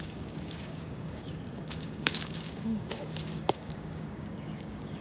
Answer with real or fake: fake